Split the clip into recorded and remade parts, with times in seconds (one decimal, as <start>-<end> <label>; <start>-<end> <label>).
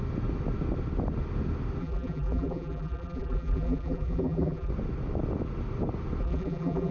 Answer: 0.0-1.8 recorded; 1.8-4.7 remade; 4.7-6.2 recorded; 6.2-6.9 remade